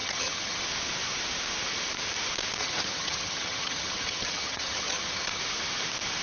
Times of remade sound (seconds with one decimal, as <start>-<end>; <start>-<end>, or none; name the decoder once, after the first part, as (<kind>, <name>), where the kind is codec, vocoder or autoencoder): 0.0-0.6 (vocoder, HiFi-GAN); 2.6-5.4